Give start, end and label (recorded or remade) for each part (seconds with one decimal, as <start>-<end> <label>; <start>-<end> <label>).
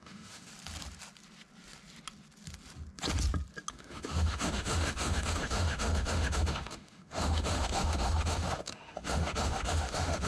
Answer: 0.0-0.5 remade; 0.5-3.7 recorded; 3.7-10.3 remade